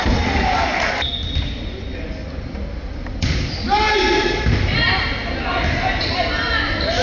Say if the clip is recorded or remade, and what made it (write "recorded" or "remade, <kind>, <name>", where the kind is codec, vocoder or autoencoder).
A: recorded